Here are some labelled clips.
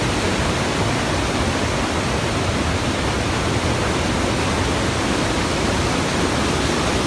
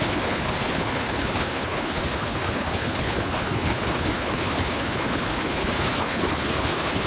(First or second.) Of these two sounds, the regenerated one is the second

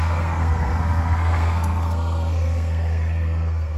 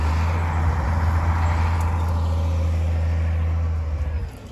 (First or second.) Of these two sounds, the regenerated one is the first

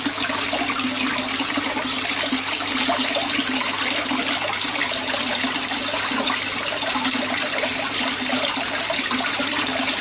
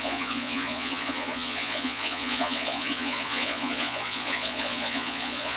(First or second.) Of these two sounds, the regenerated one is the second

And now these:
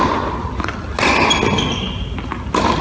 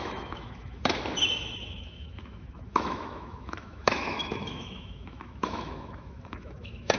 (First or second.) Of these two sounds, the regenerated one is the second